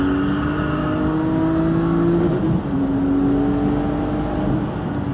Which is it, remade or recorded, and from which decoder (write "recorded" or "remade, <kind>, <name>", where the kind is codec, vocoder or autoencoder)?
recorded